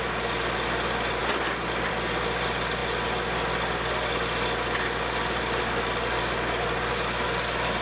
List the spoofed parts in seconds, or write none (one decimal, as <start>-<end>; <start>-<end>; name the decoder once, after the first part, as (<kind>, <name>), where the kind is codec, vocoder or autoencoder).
none